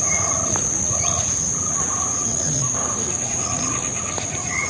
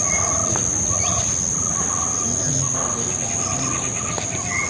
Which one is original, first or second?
second